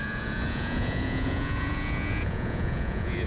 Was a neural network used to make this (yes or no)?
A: yes